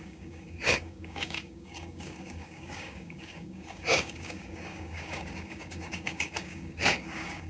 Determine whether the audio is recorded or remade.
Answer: remade